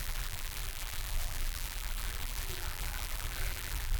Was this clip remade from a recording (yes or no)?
yes